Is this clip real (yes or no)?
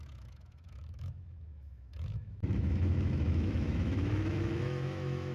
no